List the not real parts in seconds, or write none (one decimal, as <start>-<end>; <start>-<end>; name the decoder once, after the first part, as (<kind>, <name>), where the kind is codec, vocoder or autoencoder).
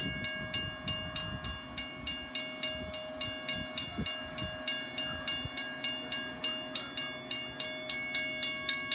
none